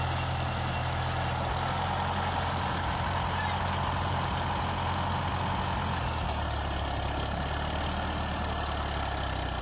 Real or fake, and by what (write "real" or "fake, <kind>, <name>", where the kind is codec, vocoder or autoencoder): real